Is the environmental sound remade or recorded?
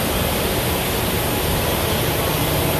recorded